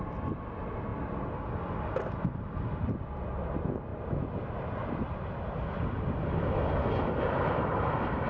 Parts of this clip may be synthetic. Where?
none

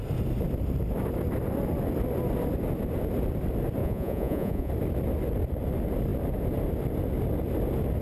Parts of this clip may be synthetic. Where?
3.8-4.7 (vocoder, Vocos)

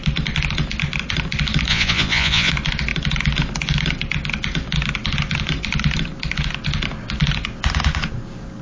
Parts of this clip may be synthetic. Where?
1.7-2.5 (vocoder, Vocos)

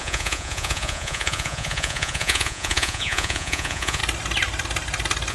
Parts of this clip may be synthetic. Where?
0.0-4.0 (vocoder, Vocos)

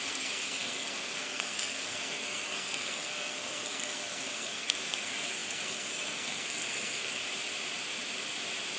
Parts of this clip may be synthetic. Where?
0.0-7.2 (codec, SNAC)

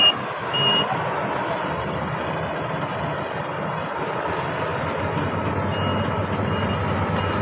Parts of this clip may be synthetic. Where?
none